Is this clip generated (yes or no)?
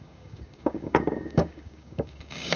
yes